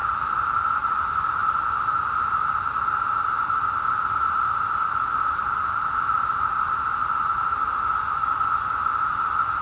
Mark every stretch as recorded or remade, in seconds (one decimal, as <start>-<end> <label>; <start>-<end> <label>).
0.0-9.6 recorded